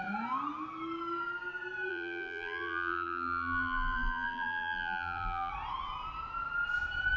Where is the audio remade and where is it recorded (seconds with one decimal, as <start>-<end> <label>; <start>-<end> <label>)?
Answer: 0.0-1.9 recorded; 1.9-5.5 remade; 5.5-7.2 recorded